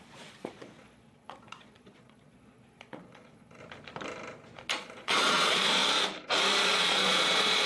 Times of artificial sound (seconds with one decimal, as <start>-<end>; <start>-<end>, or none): 0.0-3.6; 4.7-5.8; 6.6-7.7